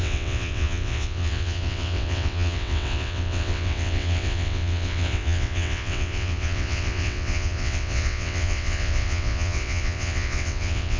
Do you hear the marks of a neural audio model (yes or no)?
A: yes